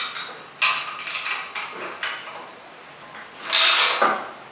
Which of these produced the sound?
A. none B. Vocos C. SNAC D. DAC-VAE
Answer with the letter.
A